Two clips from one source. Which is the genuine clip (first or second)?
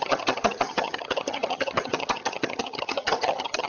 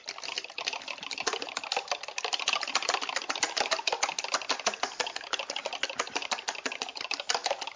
second